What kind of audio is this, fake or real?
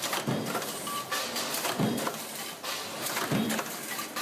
real